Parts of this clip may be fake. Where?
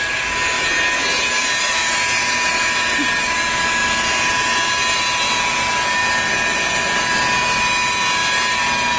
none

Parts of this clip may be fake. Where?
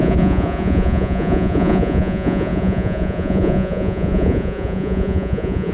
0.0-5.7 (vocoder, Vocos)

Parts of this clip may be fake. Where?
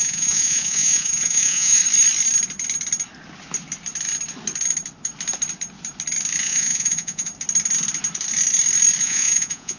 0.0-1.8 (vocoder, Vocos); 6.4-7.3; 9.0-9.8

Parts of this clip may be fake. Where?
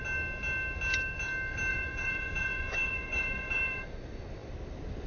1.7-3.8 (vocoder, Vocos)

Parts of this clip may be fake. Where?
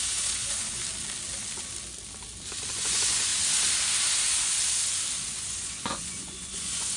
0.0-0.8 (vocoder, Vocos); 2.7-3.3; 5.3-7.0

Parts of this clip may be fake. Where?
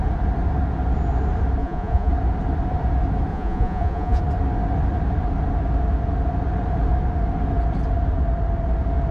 1.6-2.1 (vocoder, Vocos); 3.3-4.2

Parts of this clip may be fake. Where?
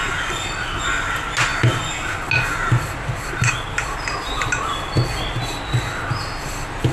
none